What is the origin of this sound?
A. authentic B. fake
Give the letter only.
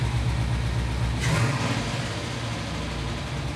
A